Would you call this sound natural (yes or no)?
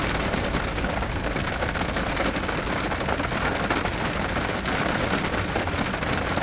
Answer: yes